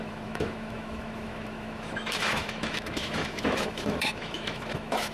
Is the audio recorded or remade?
remade